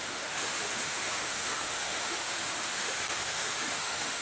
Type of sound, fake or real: fake